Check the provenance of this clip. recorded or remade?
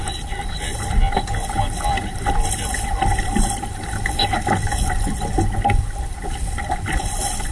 recorded